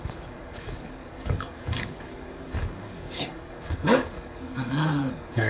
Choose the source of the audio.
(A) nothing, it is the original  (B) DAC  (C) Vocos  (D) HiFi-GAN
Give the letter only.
B